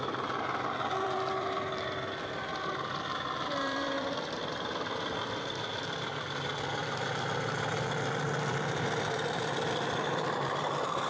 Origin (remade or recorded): remade